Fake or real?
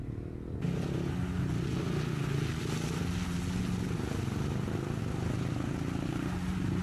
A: real